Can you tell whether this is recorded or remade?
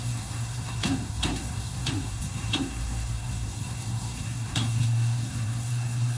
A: remade